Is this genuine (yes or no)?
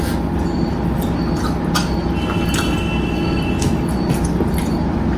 yes